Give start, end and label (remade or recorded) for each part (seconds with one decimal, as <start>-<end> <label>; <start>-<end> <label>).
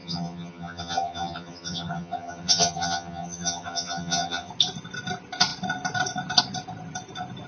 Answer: 0.0-4.5 remade; 4.5-7.5 recorded